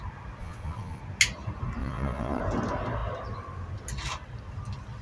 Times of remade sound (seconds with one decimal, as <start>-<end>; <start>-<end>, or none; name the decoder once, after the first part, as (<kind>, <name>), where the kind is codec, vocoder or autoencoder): 0.4-1.0 (vocoder, Vocos); 1.8-2.4

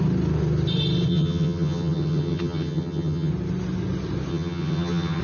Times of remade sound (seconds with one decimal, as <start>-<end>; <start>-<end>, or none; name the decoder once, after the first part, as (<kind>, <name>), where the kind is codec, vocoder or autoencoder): 1.1-3.3 (vocoder, HiFi-GAN); 4.3-5.2

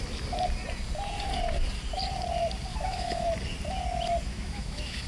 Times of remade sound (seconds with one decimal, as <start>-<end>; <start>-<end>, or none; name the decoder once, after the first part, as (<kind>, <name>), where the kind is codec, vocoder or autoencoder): 2.7-3.3 (autoencoder, DAC-VAE); 4.3-5.1

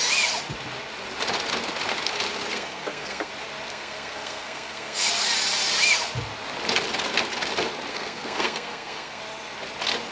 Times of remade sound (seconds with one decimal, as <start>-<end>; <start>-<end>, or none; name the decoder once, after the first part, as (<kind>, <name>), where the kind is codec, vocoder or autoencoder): 2.5-3.3 (codec, SNAC); 3.7-5.1; 7.9-9.2